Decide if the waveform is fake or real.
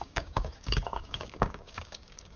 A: fake